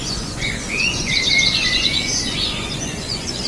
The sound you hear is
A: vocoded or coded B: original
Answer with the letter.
A